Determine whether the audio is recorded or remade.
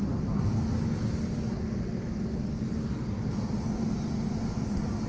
recorded